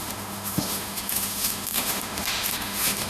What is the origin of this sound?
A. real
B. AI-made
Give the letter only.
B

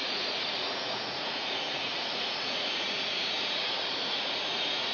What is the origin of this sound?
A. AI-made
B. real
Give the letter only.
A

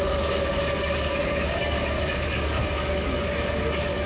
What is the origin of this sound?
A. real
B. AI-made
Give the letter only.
B